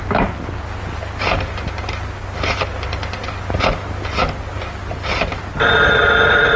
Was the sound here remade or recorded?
recorded